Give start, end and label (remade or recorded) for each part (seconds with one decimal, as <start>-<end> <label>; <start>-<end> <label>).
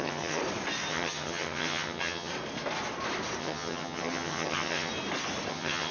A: 0.0-0.4 remade; 0.4-0.9 recorded; 0.9-2.3 remade; 2.3-3.4 recorded; 3.4-4.9 remade; 4.9-5.5 recorded; 5.5-5.9 remade